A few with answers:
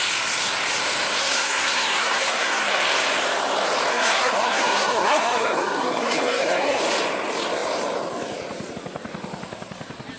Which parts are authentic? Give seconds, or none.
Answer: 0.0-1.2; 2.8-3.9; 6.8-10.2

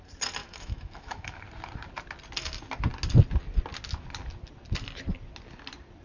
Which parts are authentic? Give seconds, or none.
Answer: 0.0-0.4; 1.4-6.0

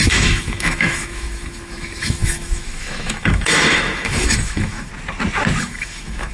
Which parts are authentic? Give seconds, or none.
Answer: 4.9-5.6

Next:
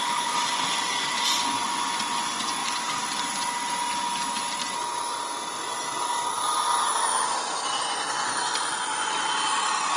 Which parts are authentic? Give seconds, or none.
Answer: 2.6-7.8